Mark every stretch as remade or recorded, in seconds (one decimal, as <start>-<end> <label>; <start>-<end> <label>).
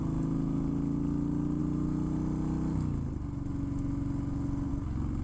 0.0-5.2 recorded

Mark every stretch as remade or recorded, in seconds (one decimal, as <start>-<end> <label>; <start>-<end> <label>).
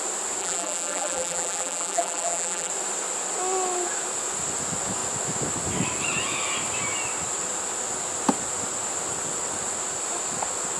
0.0-0.4 recorded; 0.4-2.7 remade; 2.7-10.8 recorded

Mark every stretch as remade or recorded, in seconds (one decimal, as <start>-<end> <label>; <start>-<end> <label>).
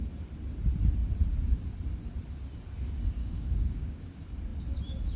0.0-3.2 recorded; 3.2-4.0 remade; 4.0-5.2 recorded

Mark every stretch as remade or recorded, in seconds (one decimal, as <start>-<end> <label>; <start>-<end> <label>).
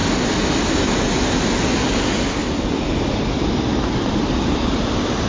0.0-2.4 recorded; 2.4-5.3 remade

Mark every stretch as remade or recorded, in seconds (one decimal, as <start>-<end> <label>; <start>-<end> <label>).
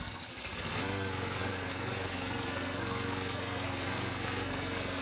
0.0-5.0 remade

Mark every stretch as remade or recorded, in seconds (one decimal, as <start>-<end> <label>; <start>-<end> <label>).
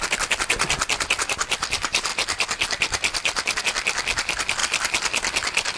0.0-5.8 recorded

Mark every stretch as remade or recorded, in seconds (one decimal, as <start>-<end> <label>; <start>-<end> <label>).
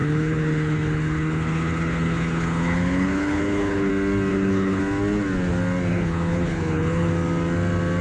0.0-3.9 remade; 3.9-4.3 recorded; 4.3-4.8 remade; 4.8-5.9 recorded; 5.9-7.1 remade; 7.1-8.0 recorded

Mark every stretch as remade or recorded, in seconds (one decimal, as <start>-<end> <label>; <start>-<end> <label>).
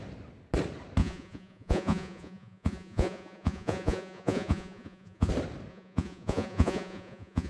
0.0-1.0 recorded; 1.0-5.3 remade; 5.3-5.7 recorded; 5.7-7.5 remade